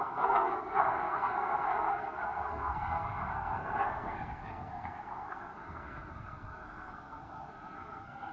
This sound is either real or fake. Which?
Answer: fake